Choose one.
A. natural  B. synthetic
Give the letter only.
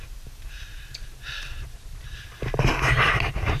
A